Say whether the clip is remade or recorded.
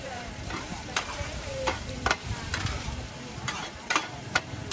remade